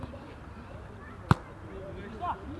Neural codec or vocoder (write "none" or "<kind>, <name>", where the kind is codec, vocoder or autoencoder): none